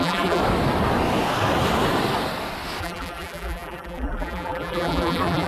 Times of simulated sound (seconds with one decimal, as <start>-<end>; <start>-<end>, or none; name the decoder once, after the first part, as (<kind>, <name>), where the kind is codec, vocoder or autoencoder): 0.0-0.4 (vocoder, BigVGAN v2); 2.8-5.5